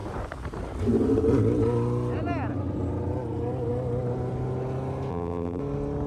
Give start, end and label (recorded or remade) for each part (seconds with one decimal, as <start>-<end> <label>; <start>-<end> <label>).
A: 0.0-5.1 recorded; 5.1-5.6 remade; 5.6-6.1 recorded